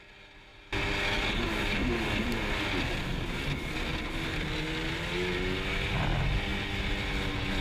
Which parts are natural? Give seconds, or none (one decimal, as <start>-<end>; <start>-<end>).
0.0-3.9; 4.5-7.6